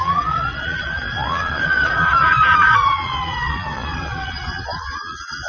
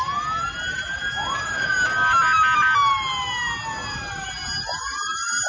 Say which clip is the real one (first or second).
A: second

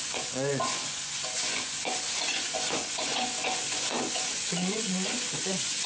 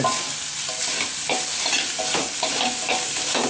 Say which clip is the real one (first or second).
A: second